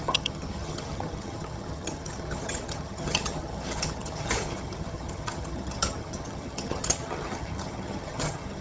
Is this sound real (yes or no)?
no